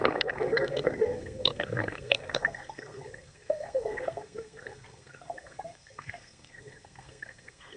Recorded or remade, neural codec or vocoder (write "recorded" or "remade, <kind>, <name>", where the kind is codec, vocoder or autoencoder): remade, codec, SNAC